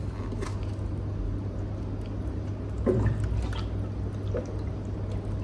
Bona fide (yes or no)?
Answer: yes